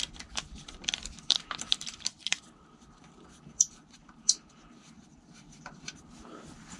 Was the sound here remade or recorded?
remade